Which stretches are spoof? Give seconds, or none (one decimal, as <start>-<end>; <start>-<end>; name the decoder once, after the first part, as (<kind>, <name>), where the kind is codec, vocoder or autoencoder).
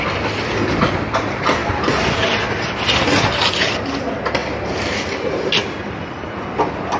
5.6-6.3 (vocoder, BigVGAN v2)